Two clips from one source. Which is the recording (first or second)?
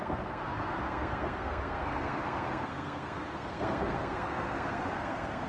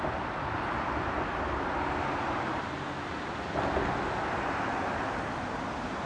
second